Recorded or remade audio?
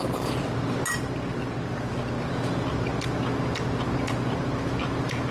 recorded